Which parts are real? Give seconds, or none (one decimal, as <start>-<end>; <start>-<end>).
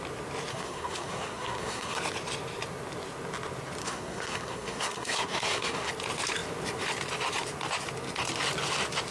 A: 0.0-0.5; 2.0-3.8; 5.9-9.1